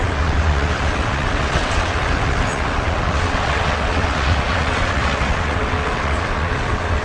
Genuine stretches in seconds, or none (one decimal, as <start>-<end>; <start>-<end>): none